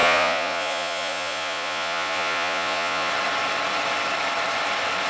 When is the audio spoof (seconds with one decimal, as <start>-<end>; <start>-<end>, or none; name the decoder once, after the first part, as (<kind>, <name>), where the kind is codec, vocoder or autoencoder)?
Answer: 0.0-3.1 (vocoder, Vocos)